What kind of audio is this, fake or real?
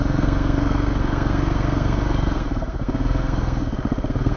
fake